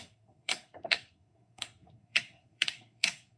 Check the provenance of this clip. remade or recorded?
remade